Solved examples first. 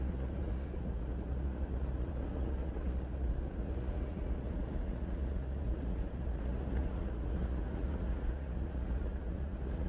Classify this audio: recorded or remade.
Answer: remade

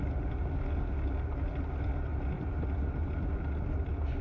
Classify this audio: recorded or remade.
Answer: recorded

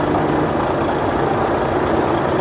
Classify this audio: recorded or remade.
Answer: recorded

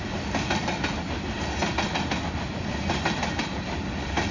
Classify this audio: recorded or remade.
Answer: recorded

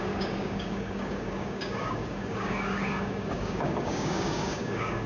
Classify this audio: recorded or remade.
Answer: remade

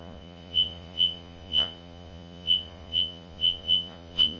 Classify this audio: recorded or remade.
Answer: remade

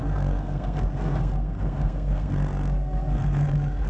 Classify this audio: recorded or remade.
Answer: remade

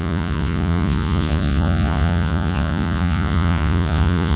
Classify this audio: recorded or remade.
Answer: remade